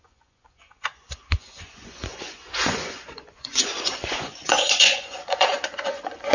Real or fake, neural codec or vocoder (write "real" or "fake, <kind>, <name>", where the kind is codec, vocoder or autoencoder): fake, vocoder, Vocos